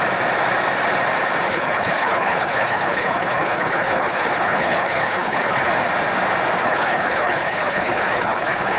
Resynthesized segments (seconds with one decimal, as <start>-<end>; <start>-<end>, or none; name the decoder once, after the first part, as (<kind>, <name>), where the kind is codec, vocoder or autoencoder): 1.5-5.7 (codec, HILCodec); 6.6-8.8